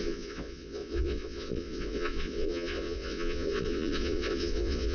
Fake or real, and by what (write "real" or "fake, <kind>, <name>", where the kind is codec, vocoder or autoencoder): fake, vocoder, Vocos